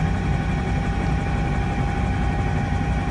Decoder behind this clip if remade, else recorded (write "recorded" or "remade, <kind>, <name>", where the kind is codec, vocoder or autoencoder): recorded